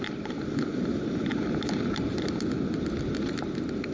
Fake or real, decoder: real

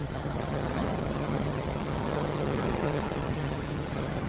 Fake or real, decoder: fake, vocoder, HiFi-GAN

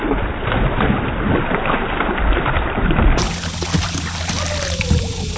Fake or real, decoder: real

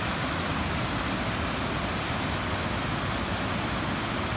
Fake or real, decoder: real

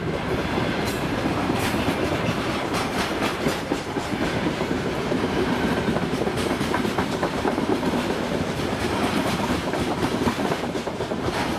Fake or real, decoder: fake, vocoder, BigVGAN v2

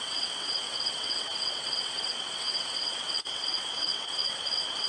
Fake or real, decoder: fake, vocoder, WaveNeXt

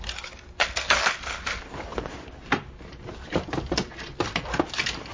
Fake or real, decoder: real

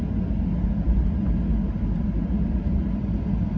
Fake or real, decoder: real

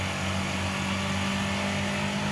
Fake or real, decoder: real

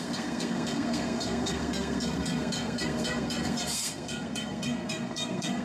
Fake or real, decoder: fake, codec, SNAC